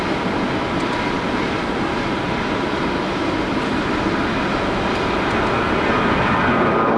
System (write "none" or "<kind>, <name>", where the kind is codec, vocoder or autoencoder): none